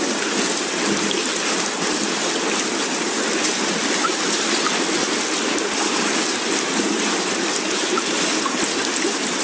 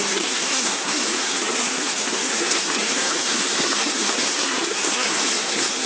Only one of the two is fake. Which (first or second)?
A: second